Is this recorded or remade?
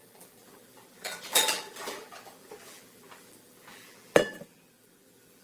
remade